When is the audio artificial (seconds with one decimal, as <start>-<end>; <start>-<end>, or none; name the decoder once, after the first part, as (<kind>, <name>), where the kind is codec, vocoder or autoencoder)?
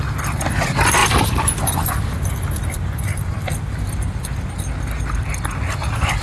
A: 1.0-4.7 (vocoder, BigVGAN v2)